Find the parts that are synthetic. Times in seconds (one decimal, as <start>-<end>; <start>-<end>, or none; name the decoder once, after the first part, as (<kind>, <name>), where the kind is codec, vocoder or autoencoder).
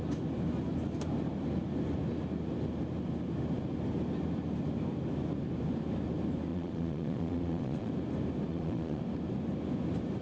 6.5-7.9 (vocoder, Vocos); 8.5-9.0